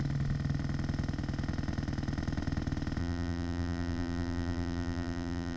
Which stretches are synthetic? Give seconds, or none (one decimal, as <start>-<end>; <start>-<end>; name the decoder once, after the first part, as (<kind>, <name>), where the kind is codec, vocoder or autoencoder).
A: 3.0-5.6 (vocoder, BigVGAN v2)

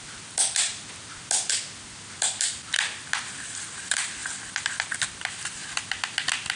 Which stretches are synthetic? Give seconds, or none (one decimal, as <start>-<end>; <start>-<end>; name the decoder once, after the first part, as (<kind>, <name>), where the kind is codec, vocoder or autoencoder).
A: 0.0-0.7 (vocoder, BigVGAN v2); 2.1-5.6

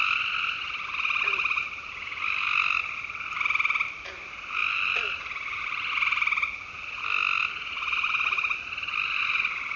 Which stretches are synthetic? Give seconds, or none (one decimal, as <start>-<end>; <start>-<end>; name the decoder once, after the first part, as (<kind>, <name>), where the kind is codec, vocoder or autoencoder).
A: 0.0-2.8 (vocoder, BigVGAN v2); 4.6-6.7

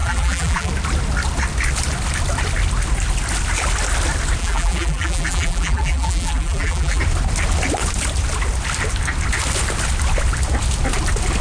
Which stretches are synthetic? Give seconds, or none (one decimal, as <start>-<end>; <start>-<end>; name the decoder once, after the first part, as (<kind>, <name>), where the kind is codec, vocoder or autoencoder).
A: 0.0-0.7 (vocoder, BigVGAN v2); 4.4-7.0